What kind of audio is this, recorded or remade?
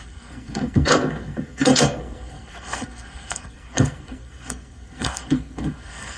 remade